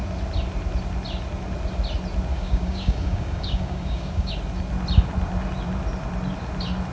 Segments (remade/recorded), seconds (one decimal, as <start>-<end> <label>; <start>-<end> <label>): 0.0-2.3 recorded; 2.3-4.3 remade; 4.3-6.9 recorded